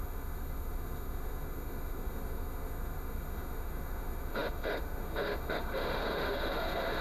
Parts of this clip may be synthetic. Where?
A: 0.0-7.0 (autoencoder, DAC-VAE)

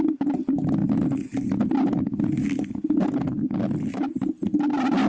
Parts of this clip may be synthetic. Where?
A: none

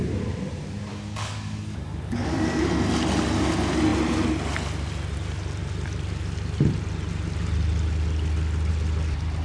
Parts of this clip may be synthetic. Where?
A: 0.9-2.7 (codec, DAC)

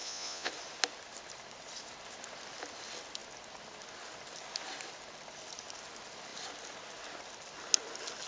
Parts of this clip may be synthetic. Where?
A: 0.0-0.5 (vocoder, Vocos)

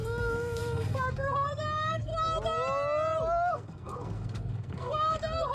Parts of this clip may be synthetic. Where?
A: 0.0-2.1 (codec, SNAC); 3.5-5.5

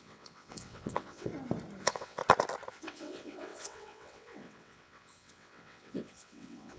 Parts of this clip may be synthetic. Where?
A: 0.0-1.3 (vocoder, WaveNeXt); 1.8-2.2; 2.7-6.8

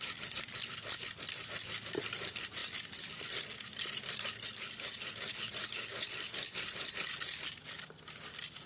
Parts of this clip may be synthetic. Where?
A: none

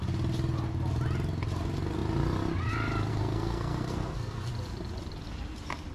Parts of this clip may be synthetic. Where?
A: 3.1-4.5 (codec, SNAC)